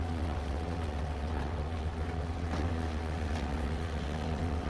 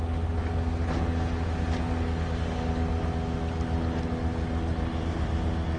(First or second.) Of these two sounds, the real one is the second